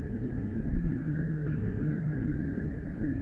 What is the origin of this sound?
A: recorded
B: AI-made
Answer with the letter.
B